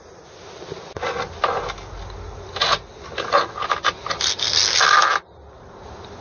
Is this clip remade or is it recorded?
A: recorded